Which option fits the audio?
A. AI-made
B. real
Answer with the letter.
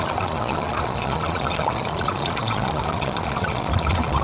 A